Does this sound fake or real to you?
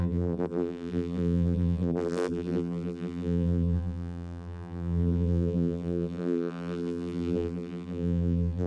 fake